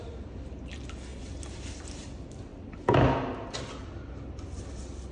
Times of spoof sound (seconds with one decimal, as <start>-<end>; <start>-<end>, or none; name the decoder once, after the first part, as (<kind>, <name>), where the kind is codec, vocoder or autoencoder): 0.0-2.5 (vocoder, BigVGAN v2); 4.1-5.1